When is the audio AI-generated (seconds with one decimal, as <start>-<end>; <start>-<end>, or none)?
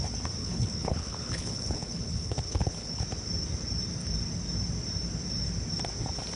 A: 0.4-3.0